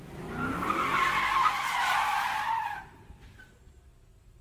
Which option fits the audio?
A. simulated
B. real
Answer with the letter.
B